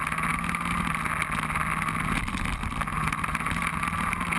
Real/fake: real